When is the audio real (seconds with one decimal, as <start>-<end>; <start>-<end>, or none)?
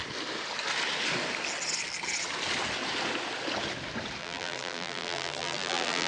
0.0-4.2